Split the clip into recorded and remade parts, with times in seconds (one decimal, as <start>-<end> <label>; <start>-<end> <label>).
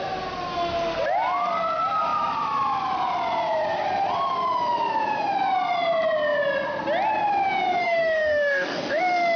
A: 0.0-7.8 recorded; 7.8-9.0 remade; 9.0-9.4 recorded